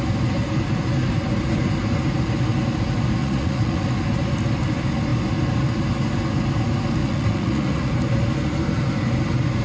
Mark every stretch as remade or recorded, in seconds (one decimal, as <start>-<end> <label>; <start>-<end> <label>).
0.0-3.2 recorded; 3.2-3.8 remade; 3.8-7.0 recorded; 7.0-7.9 remade; 7.9-9.6 recorded